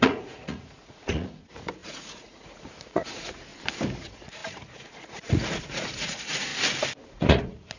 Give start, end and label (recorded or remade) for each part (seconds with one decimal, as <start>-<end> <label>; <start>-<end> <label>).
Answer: 0.0-3.5 remade; 3.5-4.0 recorded; 4.0-6.5 remade; 6.5-7.1 recorded; 7.1-7.8 remade